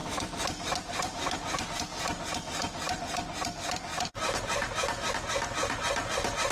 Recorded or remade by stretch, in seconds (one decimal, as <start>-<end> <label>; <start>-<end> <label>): 0.0-1.8 remade; 1.8-3.9 recorded; 3.9-5.1 remade; 5.1-6.5 recorded